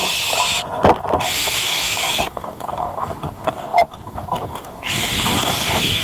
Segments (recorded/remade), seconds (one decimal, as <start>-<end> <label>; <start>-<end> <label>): 0.0-1.2 recorded; 1.2-6.0 remade